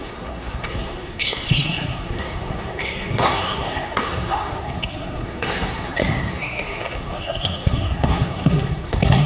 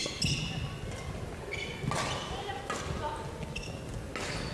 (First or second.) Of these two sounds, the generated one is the first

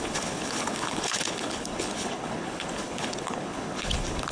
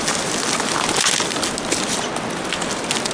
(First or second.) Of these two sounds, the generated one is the first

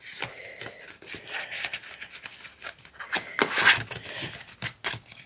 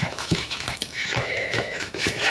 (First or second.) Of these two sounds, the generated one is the second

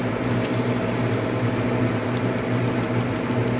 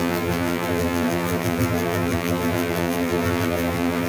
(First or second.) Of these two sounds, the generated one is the second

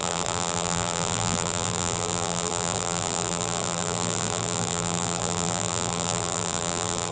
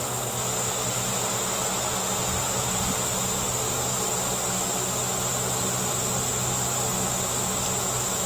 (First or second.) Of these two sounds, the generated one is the first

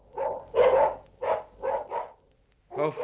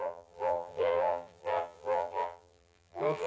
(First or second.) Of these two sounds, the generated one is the second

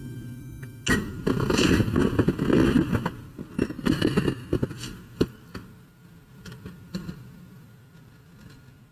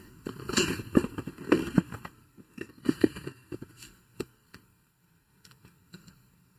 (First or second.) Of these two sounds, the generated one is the second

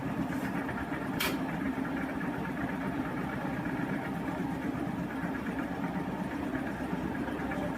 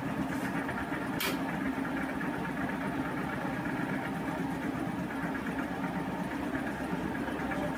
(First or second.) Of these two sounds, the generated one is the first